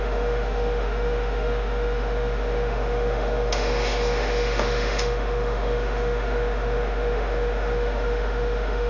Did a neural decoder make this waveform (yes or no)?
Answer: yes